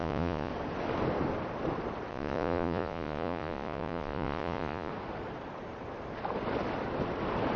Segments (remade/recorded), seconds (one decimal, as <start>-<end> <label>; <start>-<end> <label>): 0.0-0.5 remade; 0.5-2.1 recorded; 2.1-4.9 remade; 4.9-7.6 recorded